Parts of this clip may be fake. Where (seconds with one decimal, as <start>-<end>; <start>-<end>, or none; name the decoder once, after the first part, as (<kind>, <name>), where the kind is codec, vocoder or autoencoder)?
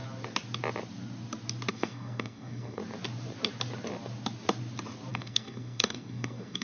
1.7-2.8 (codec, SNAC); 5.1-6.6